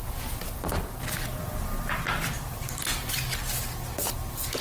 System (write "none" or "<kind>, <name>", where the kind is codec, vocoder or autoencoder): none